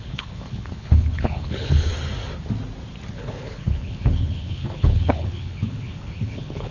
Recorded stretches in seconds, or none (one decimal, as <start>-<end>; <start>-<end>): 1.9-3.1